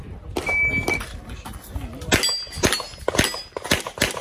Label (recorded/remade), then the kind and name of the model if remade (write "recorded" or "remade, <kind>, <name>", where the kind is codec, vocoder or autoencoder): recorded